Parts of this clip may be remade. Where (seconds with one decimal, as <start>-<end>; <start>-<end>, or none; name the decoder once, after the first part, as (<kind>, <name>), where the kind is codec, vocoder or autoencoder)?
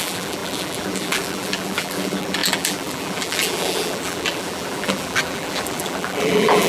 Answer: 0.0-6.7 (vocoder, BigVGAN v2)